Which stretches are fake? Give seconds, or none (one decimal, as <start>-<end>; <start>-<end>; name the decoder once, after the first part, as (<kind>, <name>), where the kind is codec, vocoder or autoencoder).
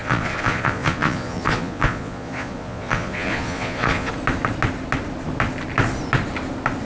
0.0-4.1 (vocoder, Vocos)